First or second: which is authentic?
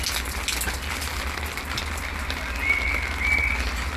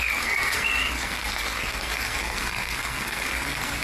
first